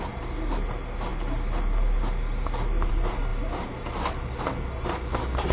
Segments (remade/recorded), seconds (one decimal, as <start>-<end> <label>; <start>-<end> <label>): 0.0-5.5 remade